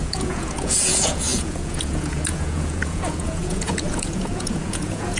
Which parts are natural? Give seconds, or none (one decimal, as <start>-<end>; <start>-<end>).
none